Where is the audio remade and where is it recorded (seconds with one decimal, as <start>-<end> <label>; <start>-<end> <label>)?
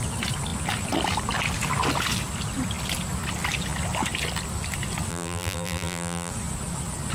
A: 0.0-5.1 recorded; 5.1-6.3 remade; 6.3-7.1 recorded